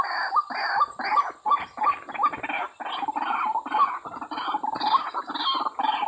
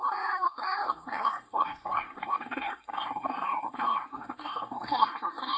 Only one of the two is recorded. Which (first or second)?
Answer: first